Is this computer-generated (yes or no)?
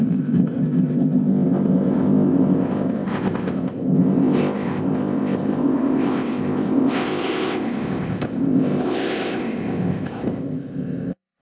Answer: yes